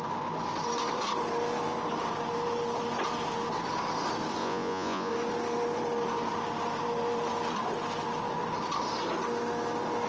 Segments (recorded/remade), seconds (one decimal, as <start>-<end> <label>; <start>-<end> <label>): 0.0-4.4 recorded; 4.4-5.1 remade; 5.1-10.1 recorded